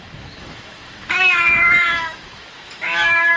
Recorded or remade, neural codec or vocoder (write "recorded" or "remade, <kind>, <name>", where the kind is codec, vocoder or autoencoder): remade, autoencoder, DAC-VAE